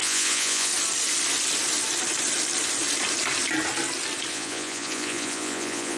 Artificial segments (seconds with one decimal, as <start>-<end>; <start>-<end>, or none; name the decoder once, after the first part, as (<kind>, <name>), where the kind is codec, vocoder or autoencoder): 0.0-0.7 (vocoder, Vocos); 4.3-6.0